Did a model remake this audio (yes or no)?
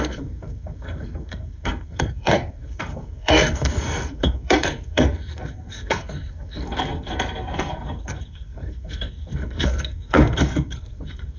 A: yes